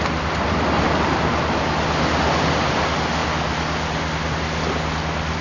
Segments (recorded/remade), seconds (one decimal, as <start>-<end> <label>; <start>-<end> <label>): 0.0-5.4 recorded